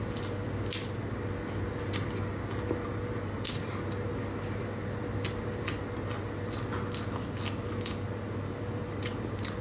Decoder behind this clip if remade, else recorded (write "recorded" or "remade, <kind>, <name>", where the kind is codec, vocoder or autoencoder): recorded